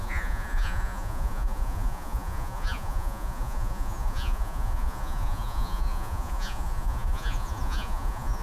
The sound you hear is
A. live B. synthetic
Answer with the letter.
B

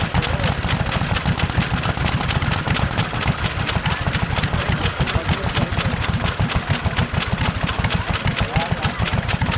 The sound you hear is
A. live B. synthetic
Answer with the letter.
A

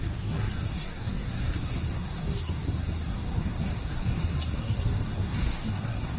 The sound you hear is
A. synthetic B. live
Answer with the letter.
A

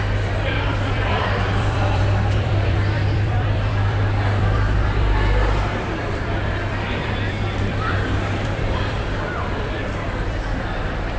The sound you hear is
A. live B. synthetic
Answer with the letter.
B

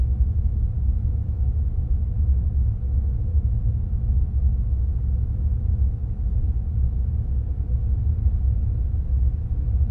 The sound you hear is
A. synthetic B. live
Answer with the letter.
B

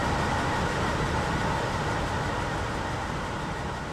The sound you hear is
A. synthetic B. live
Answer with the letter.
B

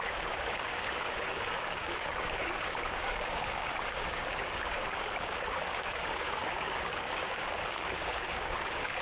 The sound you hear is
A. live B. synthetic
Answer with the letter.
B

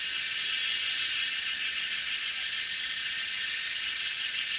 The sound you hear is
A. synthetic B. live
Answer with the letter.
A